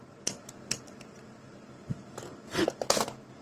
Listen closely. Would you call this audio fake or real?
real